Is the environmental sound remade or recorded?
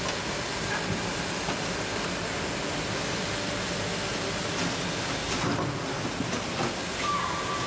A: recorded